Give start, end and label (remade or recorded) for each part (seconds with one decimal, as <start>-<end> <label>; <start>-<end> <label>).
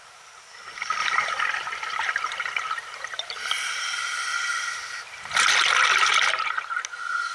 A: 0.0-1.0 recorded; 1.0-5.4 remade; 5.4-6.1 recorded; 6.1-6.7 remade; 6.7-7.3 recorded